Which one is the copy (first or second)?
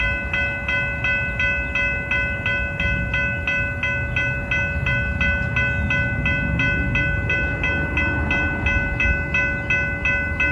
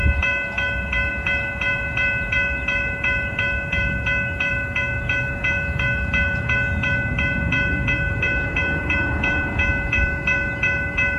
second